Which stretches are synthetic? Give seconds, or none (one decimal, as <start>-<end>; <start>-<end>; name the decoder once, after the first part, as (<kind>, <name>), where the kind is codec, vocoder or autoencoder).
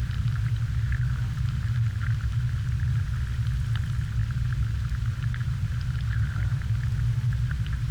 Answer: none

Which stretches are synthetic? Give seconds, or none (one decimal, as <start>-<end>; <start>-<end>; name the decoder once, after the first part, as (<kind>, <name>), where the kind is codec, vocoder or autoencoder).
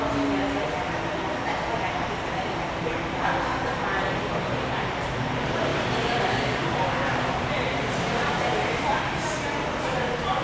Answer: 5.7-8.4 (vocoder, BigVGAN v2); 8.9-9.7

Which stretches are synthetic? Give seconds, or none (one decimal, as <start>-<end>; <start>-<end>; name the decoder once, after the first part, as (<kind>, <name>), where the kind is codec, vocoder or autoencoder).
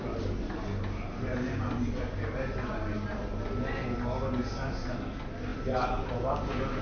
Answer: 5.5-6.3 (vocoder, BigVGAN v2)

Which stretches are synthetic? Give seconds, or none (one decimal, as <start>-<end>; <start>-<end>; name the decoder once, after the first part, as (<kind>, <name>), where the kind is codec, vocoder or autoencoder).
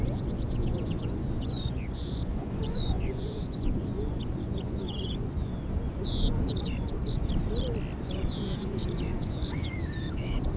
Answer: 0.0-7.3 (vocoder, Vocos); 8.0-10.6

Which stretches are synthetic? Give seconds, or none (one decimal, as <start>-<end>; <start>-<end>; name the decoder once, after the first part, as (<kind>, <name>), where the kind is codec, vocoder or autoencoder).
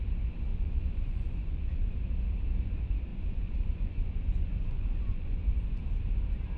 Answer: 0.5-1.9 (vocoder, Vocos); 3.1-5.8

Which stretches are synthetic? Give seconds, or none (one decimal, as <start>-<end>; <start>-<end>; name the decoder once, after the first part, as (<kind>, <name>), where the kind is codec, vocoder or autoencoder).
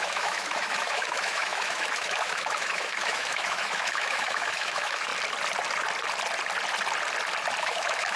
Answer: 0.0-5.1 (autoencoder, DAC-VAE); 7.6-8.2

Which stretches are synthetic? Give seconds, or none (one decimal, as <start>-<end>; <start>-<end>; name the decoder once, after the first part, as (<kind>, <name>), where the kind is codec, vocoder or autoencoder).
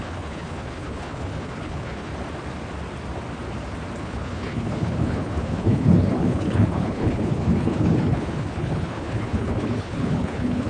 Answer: 0.0-2.1 (codec, HILCodec); 4.0-10.7